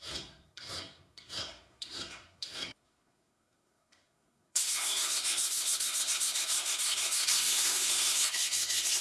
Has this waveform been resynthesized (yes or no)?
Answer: yes